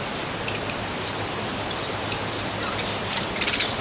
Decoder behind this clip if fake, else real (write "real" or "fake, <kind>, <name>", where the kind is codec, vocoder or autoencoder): fake, vocoder, BigVGAN v2